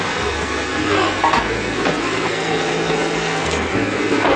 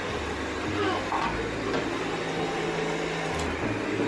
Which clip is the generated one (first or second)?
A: first